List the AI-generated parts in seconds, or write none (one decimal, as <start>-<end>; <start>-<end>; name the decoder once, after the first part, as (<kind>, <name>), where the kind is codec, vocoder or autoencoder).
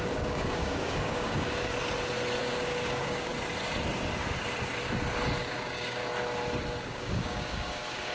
0.0-1.7 (codec, DAC); 2.4-3.3; 5.4-6.0; 6.8-8.1